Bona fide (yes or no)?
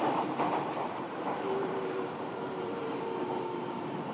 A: no